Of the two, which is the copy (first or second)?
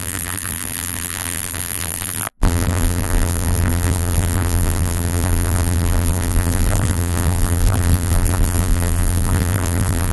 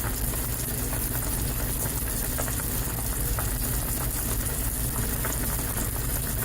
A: first